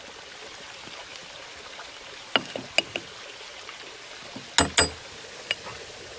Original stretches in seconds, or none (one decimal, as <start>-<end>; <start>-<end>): 0.0-6.2